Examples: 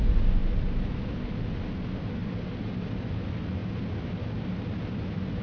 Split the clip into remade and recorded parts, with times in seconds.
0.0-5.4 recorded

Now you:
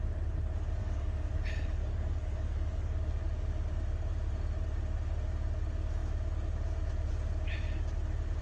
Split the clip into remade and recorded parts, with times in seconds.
0.0-0.8 recorded; 0.8-1.3 remade; 1.3-1.8 recorded; 1.8-3.1 remade; 3.1-8.4 recorded

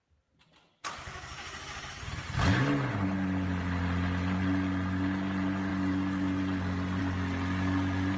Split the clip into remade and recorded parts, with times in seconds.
0.0-8.2 recorded

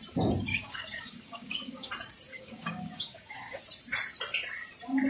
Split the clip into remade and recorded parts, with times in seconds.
0.0-0.5 recorded; 0.5-1.9 remade; 1.9-2.3 recorded; 2.3-3.6 remade; 3.6-5.1 recorded

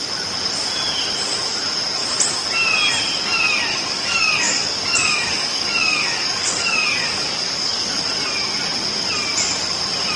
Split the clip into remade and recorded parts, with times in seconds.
0.0-3.7 recorded; 3.7-8.0 remade; 8.0-10.2 recorded

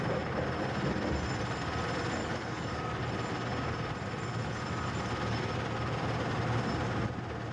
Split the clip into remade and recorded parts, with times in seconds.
0.0-2.2 recorded; 2.2-3.0 remade; 3.0-7.5 recorded